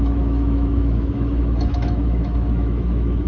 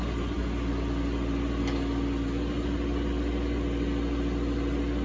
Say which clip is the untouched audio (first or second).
second